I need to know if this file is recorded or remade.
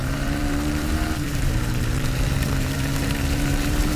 remade